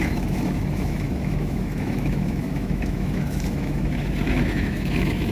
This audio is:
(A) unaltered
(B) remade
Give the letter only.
B